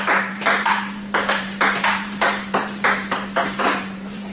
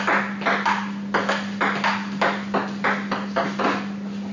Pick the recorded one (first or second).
second